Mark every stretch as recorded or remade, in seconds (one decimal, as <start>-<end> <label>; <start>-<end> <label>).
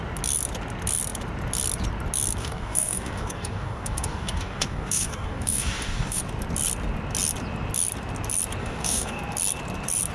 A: 0.0-2.4 recorded; 2.4-6.2 remade; 6.2-8.6 recorded; 8.6-9.2 remade; 9.2-10.1 recorded